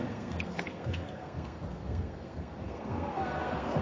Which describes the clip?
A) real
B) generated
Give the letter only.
B